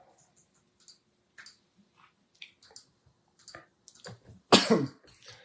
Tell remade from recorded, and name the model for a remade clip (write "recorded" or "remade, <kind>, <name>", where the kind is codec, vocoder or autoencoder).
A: recorded